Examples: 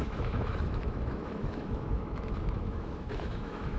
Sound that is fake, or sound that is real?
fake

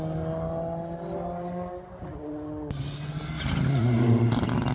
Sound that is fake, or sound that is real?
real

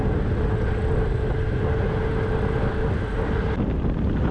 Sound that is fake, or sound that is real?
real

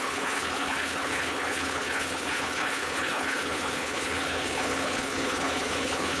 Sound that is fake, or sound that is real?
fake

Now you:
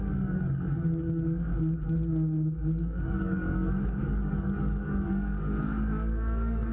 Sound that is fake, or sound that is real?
fake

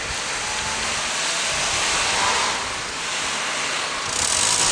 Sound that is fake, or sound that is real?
real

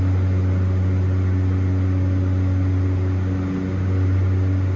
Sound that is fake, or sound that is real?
real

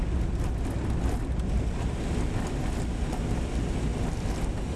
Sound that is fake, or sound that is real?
real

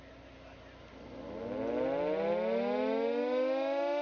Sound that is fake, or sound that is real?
real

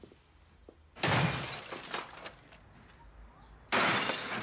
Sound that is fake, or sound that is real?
real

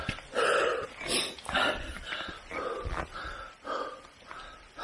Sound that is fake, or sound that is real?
real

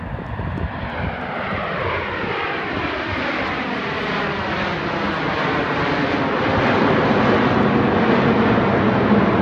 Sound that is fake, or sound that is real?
real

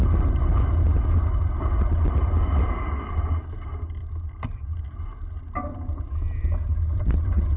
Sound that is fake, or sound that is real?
real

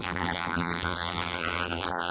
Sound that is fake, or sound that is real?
fake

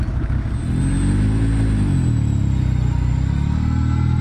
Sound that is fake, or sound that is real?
real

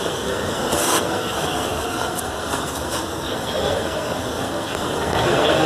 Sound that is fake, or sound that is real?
fake